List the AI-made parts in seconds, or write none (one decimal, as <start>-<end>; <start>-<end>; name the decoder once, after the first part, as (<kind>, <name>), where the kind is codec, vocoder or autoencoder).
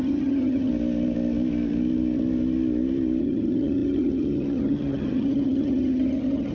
0.0-0.7 (vocoder, HiFi-GAN); 3.2-6.5